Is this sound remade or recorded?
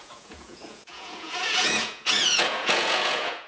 remade